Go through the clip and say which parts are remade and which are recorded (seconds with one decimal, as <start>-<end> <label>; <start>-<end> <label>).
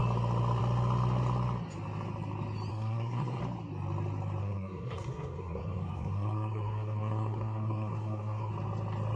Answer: 0.0-2.7 recorded; 2.7-3.4 remade; 3.4-4.4 recorded; 4.4-8.5 remade; 8.5-9.2 recorded